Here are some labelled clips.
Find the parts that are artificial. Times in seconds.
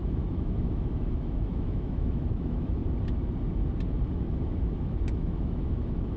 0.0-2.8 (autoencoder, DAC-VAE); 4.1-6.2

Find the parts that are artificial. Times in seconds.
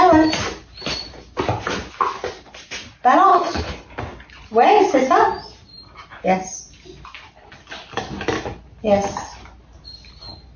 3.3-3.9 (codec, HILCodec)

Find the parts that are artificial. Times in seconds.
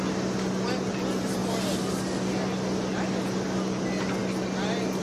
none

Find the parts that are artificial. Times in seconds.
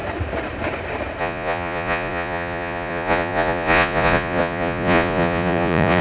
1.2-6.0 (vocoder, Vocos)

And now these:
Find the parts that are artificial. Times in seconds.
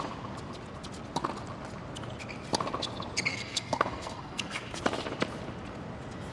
3.3-4.8 (codec, SNAC)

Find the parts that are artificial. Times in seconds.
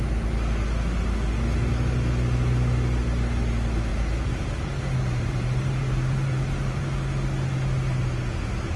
3.9-6.9 (vocoder, BigVGAN v2)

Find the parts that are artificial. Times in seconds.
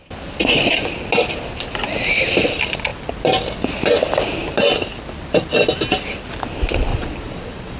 6.9-7.8 (vocoder, Vocos)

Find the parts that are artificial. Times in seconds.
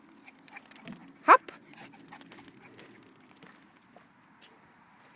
none